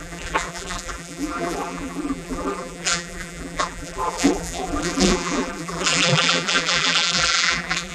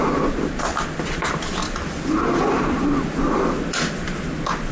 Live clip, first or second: second